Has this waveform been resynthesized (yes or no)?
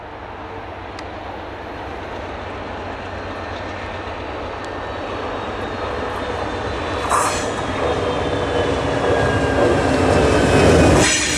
no